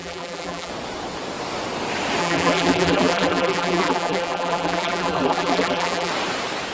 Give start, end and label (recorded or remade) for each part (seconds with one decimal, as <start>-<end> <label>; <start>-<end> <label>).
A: 0.0-0.7 remade; 0.7-2.2 recorded; 2.2-6.1 remade; 6.1-6.7 recorded